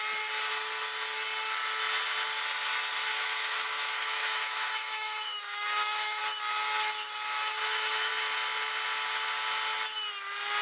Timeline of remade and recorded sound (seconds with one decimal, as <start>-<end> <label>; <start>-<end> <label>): 0.0-3.1 recorded; 3.1-6.2 remade; 6.2-7.4 recorded; 7.4-8.1 remade; 8.1-10.6 recorded